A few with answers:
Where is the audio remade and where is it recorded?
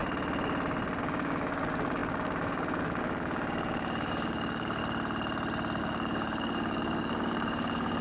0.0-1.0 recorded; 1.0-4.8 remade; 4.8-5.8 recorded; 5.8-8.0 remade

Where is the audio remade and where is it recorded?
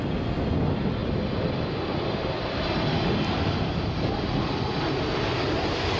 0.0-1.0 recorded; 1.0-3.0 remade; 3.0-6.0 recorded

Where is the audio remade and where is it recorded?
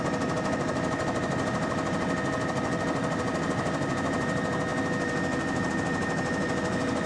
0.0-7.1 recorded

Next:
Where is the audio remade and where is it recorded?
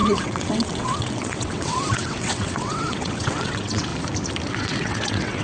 0.0-3.9 remade; 3.9-4.5 recorded; 4.5-5.4 remade